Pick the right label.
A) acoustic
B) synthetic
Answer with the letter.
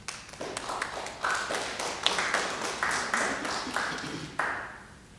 A